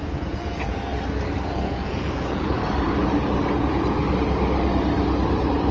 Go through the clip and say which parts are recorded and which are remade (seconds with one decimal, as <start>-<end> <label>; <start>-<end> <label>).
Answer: 0.0-0.9 remade; 0.9-1.5 recorded; 1.5-2.6 remade; 2.6-3.6 recorded; 3.6-4.0 remade; 4.0-5.7 recorded